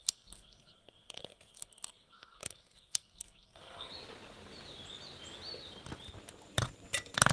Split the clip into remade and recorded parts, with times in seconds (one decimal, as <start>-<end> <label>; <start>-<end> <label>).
0.0-3.9 remade; 3.9-7.3 recorded